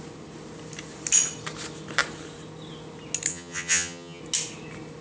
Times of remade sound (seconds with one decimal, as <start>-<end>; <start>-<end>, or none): 3.3-4.2